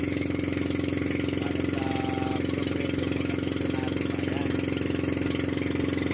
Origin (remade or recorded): recorded